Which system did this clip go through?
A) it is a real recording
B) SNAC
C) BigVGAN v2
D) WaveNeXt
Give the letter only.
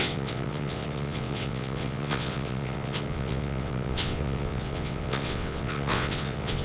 D